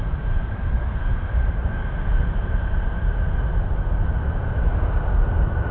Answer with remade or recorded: recorded